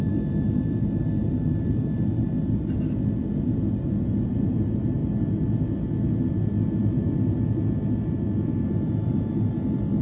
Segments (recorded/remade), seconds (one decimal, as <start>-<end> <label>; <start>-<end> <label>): 0.0-2.1 remade; 2.1-3.9 recorded; 3.9-5.0 remade; 5.0-8.4 recorded; 8.4-10.0 remade